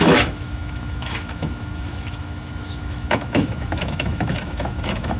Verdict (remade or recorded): remade